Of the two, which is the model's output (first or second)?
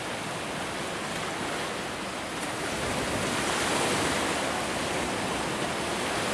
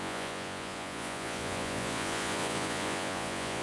second